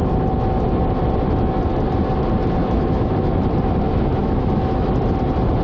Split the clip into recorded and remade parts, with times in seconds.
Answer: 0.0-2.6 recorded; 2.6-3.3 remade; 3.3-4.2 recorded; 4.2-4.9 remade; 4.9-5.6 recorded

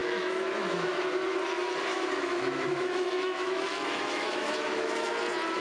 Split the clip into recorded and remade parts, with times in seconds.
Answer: 0.0-1.0 remade; 1.0-1.9 recorded; 1.9-5.1 remade; 5.1-5.6 recorded

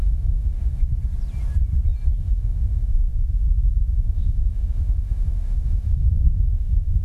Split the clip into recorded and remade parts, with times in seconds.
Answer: 0.0-0.9 remade; 0.9-2.2 recorded; 2.2-7.0 remade

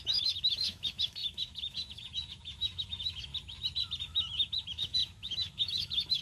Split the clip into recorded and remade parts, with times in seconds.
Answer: 0.0-3.3 remade; 3.3-4.0 recorded; 4.0-6.2 remade